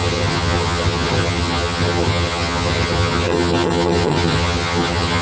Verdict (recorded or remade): remade